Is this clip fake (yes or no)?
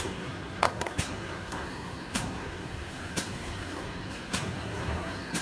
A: yes